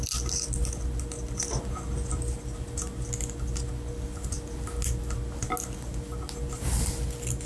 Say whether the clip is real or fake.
real